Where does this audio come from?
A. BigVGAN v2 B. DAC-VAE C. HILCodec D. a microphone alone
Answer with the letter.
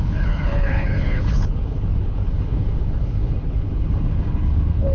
C